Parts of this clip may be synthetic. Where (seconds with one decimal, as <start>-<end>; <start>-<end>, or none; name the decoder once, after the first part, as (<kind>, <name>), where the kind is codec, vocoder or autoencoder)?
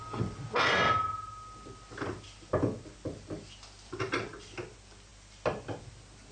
none